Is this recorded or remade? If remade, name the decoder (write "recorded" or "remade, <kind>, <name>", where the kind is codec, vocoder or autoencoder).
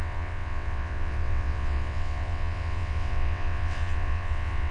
remade, vocoder, WaveNeXt